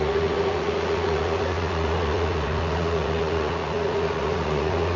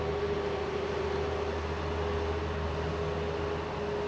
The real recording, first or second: second